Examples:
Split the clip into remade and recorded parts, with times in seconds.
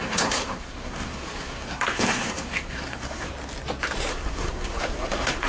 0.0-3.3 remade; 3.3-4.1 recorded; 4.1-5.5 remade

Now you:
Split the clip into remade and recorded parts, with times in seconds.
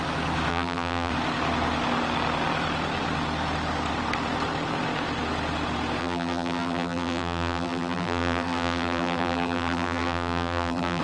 0.0-0.5 recorded; 0.5-1.1 remade; 1.1-6.0 recorded; 6.0-11.0 remade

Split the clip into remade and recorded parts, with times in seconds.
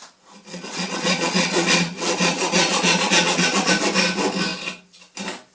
0.0-0.5 recorded; 0.5-3.7 remade; 3.7-5.5 recorded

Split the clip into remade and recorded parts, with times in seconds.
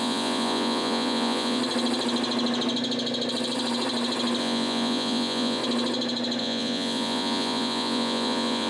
0.0-1.6 remade; 1.6-4.4 recorded; 4.4-5.6 remade; 5.6-6.4 recorded; 6.4-8.7 remade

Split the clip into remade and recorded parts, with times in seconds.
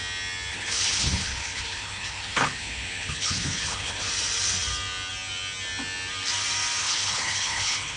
0.0-0.5 recorded; 0.5-4.1 remade; 4.1-6.8 recorded; 6.8-8.0 remade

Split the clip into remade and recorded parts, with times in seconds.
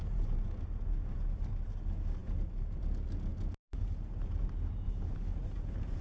0.0-6.0 recorded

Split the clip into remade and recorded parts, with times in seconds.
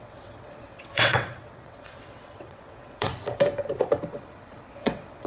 0.0-3.1 remade; 3.1-4.7 recorded; 4.7-5.3 remade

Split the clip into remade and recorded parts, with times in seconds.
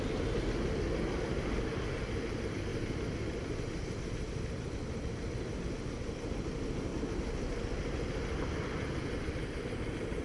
0.0-10.2 recorded